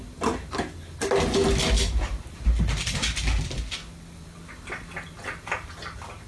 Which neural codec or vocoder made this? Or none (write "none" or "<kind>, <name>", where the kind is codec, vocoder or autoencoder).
none